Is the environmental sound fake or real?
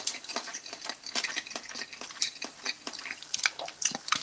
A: real